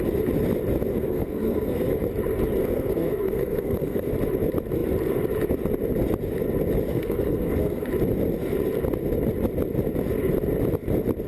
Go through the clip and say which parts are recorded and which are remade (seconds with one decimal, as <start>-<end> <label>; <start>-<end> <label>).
0.0-0.9 recorded; 0.9-1.9 remade; 1.9-2.6 recorded; 2.6-4.1 remade; 4.1-6.9 recorded; 6.9-7.9 remade; 7.9-11.3 recorded